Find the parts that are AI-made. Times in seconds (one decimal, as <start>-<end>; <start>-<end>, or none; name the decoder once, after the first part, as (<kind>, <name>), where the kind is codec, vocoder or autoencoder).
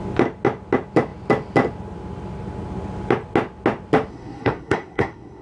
4.1-5.4 (codec, SNAC)